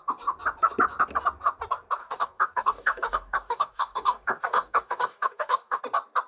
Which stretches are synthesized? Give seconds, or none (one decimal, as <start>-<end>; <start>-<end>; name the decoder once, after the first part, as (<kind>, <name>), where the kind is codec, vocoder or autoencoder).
2.0-5.8 (codec, DAC)